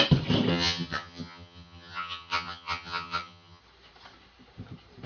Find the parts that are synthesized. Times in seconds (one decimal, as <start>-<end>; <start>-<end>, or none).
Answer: 0.5-3.6